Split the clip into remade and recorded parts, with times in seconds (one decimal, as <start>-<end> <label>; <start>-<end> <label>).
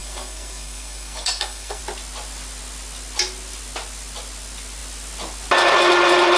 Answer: 0.0-1.8 remade; 1.8-6.4 recorded